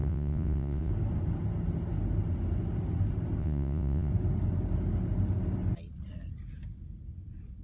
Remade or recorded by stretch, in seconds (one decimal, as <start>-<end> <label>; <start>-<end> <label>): 0.0-0.9 remade; 0.9-3.4 recorded; 3.4-4.1 remade; 4.1-7.6 recorded

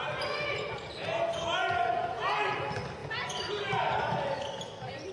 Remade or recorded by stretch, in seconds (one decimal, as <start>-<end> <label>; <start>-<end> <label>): 0.0-5.1 recorded